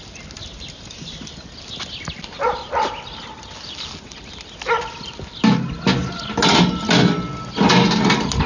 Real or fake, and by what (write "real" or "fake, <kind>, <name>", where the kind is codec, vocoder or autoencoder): real